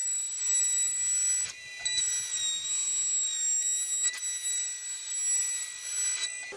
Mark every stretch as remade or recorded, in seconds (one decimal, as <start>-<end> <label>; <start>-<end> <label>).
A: 0.0-6.6 recorded